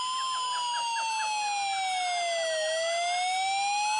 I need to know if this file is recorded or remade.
recorded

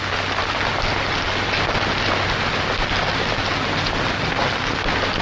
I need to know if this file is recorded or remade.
recorded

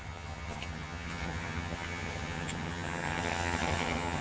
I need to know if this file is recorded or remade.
remade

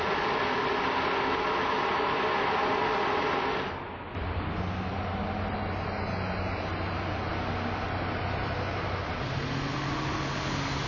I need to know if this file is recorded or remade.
recorded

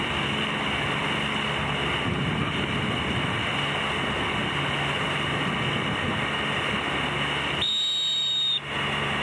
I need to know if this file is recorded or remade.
recorded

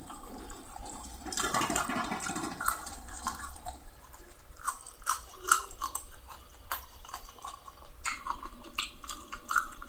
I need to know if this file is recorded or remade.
remade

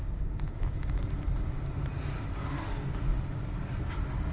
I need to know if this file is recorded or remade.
recorded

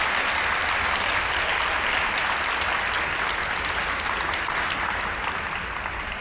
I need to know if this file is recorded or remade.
recorded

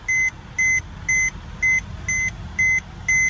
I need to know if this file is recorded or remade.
recorded